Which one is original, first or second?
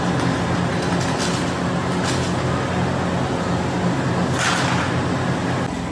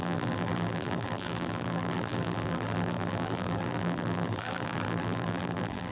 first